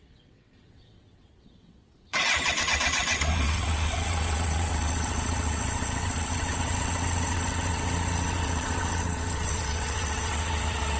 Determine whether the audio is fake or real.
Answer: fake